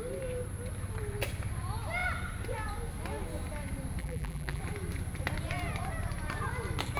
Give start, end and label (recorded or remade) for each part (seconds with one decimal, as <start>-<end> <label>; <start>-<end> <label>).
0.0-4.0 recorded; 4.0-4.6 remade; 4.6-7.0 recorded